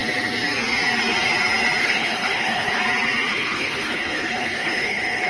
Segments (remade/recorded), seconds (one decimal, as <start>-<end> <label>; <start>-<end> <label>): 0.0-1.8 recorded; 1.8-2.8 remade; 2.8-3.3 recorded; 3.3-5.3 remade